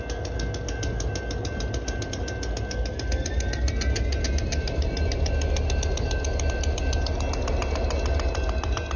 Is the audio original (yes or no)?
yes